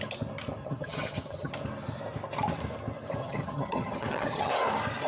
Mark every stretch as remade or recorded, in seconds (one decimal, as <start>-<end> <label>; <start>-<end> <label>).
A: 0.0-0.6 recorded; 0.6-1.5 remade; 1.5-3.2 recorded; 3.2-4.5 remade; 4.5-5.1 recorded